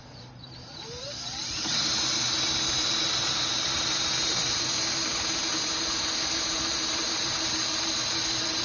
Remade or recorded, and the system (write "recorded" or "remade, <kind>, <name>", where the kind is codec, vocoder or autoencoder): remade, vocoder, BigVGAN v2